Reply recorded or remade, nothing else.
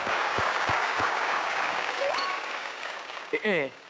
remade